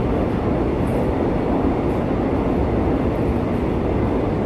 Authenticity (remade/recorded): recorded